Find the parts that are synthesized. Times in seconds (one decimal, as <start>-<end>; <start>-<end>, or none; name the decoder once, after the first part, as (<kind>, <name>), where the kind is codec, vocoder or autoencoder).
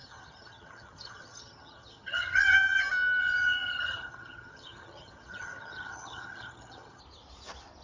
0.0-2.8 (vocoder, HiFi-GAN); 3.2-7.0